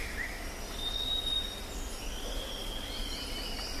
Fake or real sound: real